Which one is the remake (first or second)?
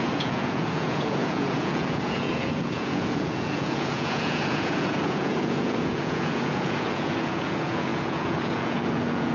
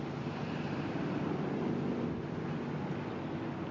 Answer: first